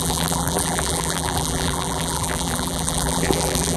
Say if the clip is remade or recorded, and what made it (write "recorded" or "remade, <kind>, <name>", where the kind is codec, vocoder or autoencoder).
remade, vocoder, BigVGAN v2